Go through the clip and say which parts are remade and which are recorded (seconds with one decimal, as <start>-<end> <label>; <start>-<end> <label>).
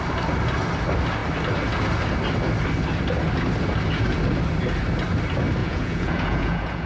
0.0-5.6 recorded; 5.6-6.9 remade